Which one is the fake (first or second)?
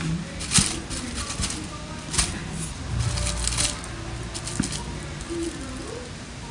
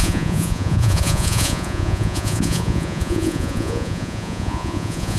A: second